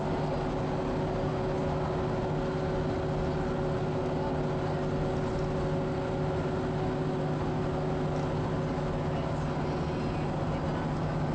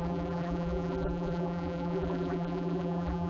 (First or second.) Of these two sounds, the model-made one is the second